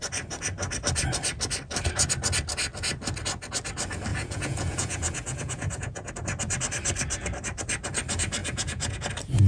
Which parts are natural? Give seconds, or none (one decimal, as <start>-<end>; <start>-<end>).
0.0-4.1; 6.1-8.4; 9.1-9.5